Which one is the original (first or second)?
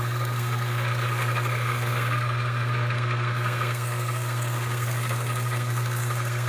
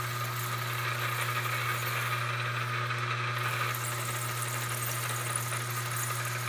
second